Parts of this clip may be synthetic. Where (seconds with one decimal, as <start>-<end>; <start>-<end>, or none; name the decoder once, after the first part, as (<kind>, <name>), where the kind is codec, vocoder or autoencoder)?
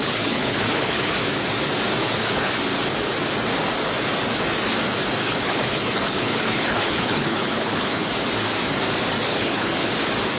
0.0-1.1 (codec, HILCodec); 2.0-2.5; 5.2-8.1; 9.3-9.9